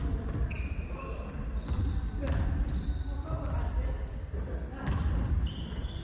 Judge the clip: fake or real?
fake